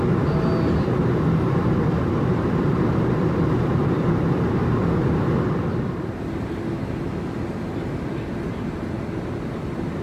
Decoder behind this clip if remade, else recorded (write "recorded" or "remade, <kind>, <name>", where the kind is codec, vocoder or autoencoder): recorded